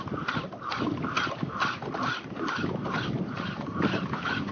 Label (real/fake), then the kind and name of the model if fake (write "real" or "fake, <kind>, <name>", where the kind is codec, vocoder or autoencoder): real